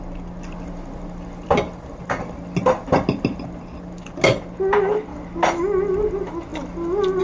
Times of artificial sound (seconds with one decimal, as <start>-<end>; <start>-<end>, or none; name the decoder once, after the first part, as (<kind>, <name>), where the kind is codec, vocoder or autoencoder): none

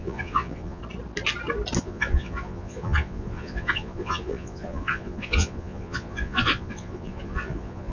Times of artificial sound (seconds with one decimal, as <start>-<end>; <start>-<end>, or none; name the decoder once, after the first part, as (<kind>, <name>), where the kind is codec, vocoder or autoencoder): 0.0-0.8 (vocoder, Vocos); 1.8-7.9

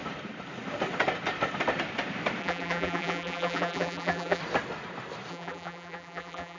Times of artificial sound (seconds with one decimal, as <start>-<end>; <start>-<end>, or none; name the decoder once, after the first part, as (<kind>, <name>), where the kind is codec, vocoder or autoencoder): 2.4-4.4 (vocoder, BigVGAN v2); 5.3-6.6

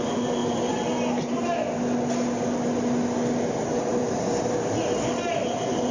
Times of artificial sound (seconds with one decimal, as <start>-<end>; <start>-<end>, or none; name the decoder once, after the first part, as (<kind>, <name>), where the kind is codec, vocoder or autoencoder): 0.4-1.5 (vocoder, BigVGAN v2); 3.9-5.9